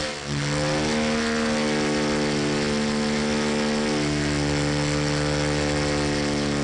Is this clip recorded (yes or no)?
yes